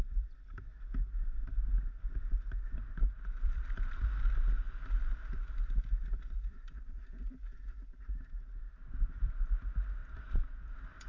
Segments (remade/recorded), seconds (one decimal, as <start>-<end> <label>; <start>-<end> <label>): 0.0-0.7 remade; 0.7-2.2 recorded; 2.2-11.1 remade